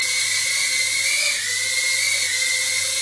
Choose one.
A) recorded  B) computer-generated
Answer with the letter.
A